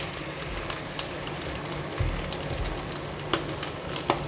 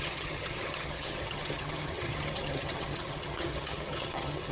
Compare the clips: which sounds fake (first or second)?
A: second